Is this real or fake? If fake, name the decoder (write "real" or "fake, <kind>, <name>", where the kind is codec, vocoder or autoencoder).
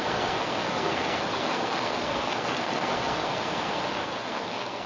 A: fake, codec, SNAC